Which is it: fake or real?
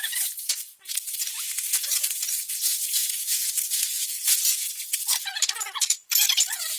fake